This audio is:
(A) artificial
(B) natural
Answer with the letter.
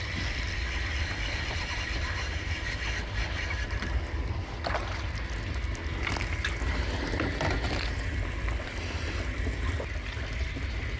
B